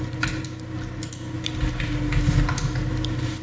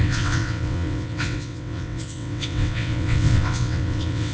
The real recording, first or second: first